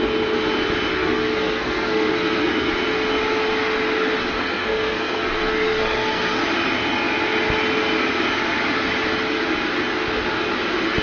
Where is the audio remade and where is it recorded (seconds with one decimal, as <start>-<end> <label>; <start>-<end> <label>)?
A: 0.0-0.9 recorded; 0.9-2.7 remade; 2.7-4.4 recorded; 4.4-6.4 remade; 6.4-11.0 recorded